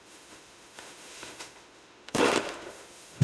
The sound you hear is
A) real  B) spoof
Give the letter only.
B